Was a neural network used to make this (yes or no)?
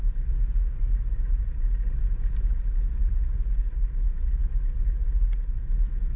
no